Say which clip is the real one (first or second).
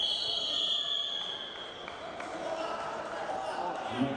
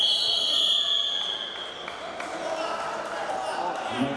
second